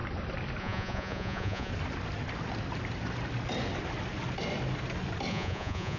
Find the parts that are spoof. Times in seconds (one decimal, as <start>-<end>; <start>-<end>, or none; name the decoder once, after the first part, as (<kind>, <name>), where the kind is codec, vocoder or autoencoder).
0.6-1.7 (vocoder, Vocos); 5.3-6.0